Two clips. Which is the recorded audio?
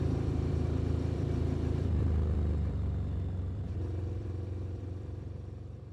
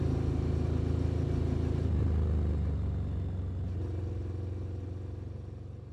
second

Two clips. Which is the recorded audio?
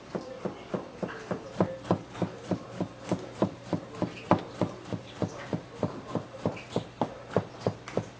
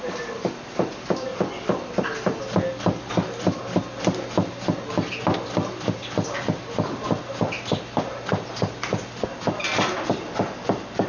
second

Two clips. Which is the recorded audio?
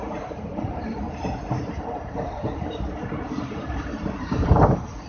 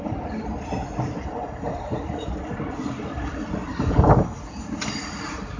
second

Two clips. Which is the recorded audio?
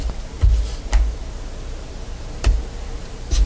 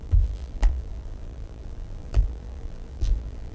first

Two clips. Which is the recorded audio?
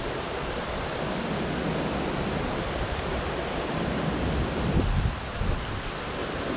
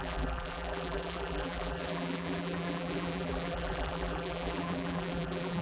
first